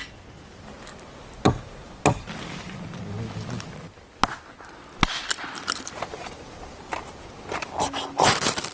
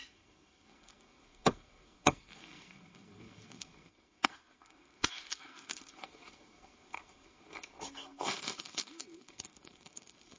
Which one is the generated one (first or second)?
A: second